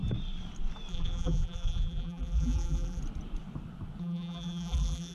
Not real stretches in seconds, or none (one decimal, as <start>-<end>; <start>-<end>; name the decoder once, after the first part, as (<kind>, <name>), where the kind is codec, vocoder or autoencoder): 0.9-3.0 (vocoder, BigVGAN v2); 4.0-5.1